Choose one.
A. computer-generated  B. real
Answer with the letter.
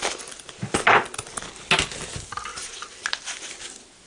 B